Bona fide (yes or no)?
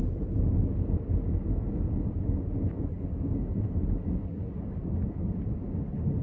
yes